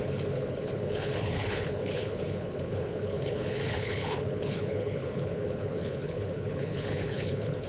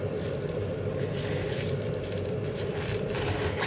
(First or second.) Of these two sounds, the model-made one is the first